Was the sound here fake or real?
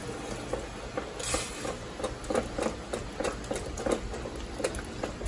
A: real